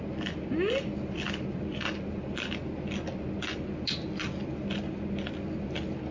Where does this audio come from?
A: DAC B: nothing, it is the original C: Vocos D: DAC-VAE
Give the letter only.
B